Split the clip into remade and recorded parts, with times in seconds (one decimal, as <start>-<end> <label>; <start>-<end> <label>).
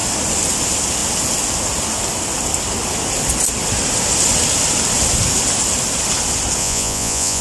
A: 0.0-6.6 recorded; 6.6-7.4 remade